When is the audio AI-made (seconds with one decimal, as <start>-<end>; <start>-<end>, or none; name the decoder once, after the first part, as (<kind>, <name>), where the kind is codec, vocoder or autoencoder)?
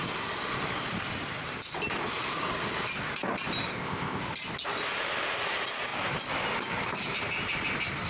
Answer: 3.7-4.2 (codec, ZipCodec)